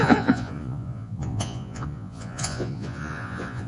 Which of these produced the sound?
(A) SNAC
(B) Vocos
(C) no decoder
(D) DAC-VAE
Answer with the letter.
B